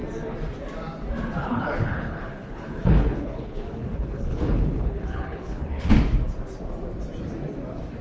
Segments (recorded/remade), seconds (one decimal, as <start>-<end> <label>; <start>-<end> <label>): 0.0-1.4 recorded; 1.4-5.9 remade; 5.9-8.0 recorded